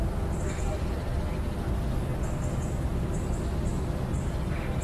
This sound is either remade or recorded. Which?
recorded